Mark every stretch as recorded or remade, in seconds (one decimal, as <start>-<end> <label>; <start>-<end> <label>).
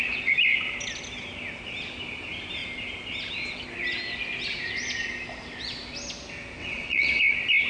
0.0-6.6 recorded; 6.6-7.2 remade; 7.2-7.7 recorded